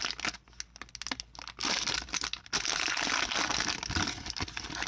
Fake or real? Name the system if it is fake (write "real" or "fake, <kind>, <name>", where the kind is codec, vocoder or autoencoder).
real